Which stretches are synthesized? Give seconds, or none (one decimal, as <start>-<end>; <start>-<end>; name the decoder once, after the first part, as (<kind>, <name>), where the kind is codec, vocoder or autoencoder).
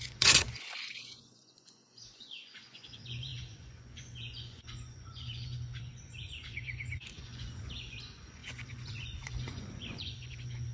0.0-10.7 (vocoder, Vocos)